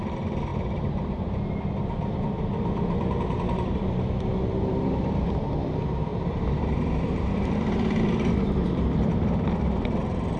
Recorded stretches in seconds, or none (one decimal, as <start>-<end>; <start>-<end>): 3.8-4.7